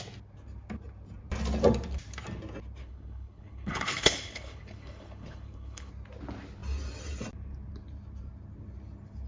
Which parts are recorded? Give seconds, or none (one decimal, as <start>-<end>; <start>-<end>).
0.0-2.8; 5.9-9.3